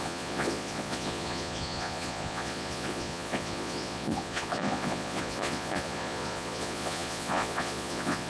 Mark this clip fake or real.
fake